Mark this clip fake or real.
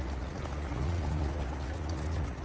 fake